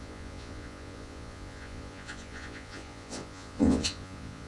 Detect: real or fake fake